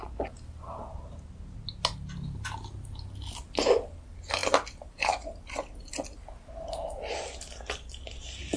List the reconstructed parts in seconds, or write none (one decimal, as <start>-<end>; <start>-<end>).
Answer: none